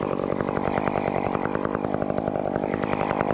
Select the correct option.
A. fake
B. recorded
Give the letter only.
B